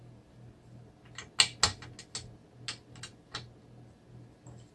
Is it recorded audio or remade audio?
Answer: recorded